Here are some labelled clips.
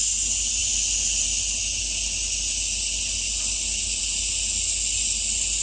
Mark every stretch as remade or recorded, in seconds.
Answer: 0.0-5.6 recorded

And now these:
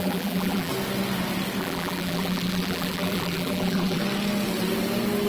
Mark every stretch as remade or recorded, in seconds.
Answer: 0.0-0.7 remade; 0.7-1.6 recorded; 1.6-4.0 remade; 4.0-5.3 recorded

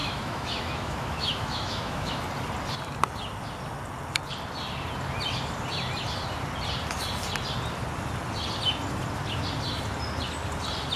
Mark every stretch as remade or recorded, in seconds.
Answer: 0.0-2.2 remade; 2.2-11.0 recorded

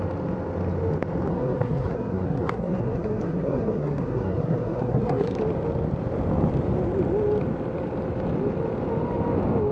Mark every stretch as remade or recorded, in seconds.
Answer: 0.0-1.3 recorded; 1.3-5.4 remade; 5.4-9.7 recorded

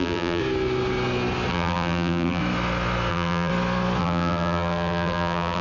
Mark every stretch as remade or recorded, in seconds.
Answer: 0.0-0.4 remade; 0.4-1.5 recorded; 1.5-2.4 remade; 2.4-3.1 recorded; 3.1-3.5 remade; 3.5-4.0 recorded; 4.0-5.6 remade

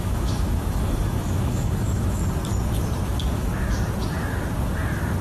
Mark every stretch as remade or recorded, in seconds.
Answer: 0.0-2.2 remade; 2.2-3.1 recorded; 3.1-3.5 remade; 3.5-5.2 recorded